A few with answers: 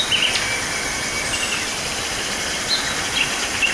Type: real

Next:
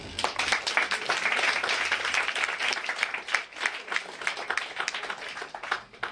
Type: real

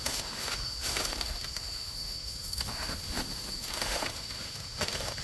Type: fake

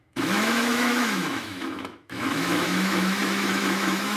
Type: fake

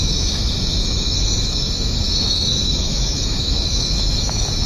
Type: fake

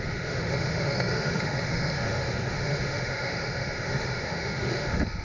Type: fake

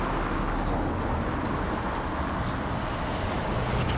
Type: real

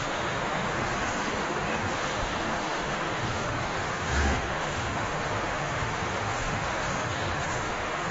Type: fake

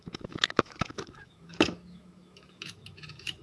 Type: fake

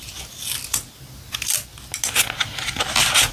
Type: real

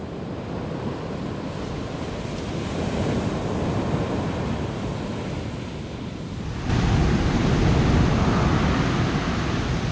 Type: real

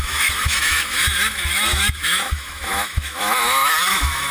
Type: fake